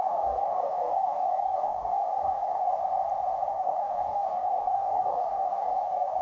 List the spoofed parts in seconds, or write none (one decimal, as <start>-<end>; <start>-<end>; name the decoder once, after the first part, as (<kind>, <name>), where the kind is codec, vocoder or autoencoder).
0.0-2.8 (codec, DAC); 3.5-6.2